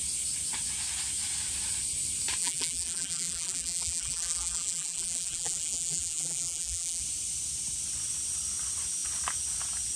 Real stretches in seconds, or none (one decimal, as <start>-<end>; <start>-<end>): 0.0-2.4; 7.0-10.0